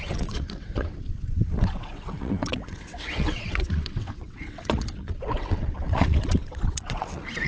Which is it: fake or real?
fake